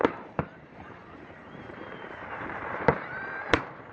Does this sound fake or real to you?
fake